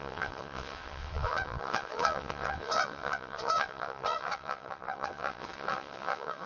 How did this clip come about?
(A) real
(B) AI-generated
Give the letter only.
B